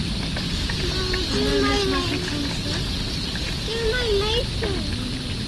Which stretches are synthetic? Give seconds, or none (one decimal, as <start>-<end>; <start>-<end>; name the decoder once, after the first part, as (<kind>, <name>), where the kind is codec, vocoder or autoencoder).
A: none